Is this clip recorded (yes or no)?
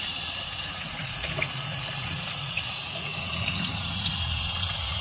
no